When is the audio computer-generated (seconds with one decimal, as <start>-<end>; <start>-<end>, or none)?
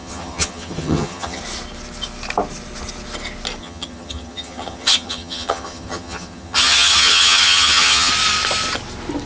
0.0-1.4; 3.6-8.1